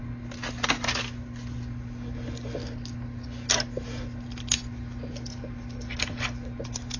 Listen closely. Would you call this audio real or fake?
real